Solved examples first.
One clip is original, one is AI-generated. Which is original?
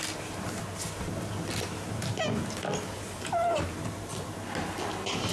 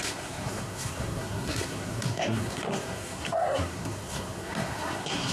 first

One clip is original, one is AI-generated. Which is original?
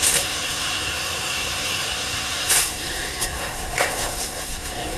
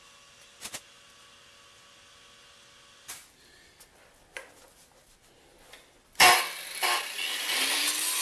second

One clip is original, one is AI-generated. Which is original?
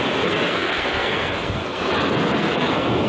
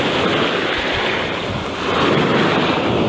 second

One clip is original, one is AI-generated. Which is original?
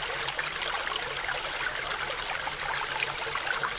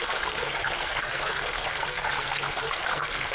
first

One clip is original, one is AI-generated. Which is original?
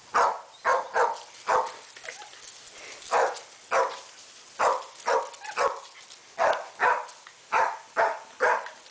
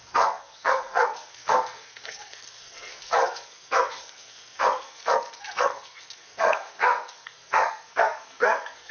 first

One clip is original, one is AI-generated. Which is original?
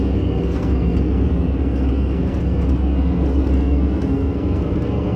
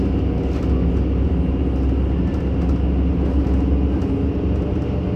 second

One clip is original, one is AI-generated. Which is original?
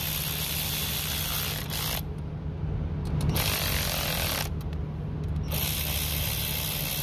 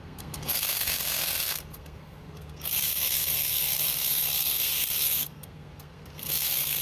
first